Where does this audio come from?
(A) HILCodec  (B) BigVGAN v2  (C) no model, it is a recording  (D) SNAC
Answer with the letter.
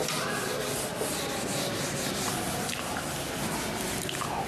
C